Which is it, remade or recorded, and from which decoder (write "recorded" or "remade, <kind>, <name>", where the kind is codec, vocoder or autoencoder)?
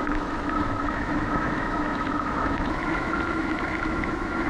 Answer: remade, autoencoder, DAC-VAE